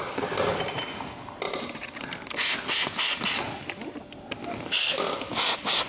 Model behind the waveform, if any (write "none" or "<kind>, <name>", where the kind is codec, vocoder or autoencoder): none